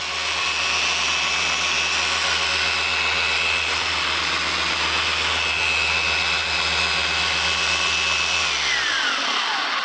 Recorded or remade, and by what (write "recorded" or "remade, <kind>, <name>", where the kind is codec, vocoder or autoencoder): recorded